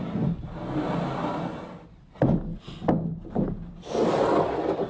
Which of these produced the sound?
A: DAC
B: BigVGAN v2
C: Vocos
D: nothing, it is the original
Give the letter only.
D